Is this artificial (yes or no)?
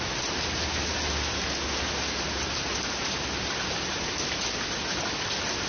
no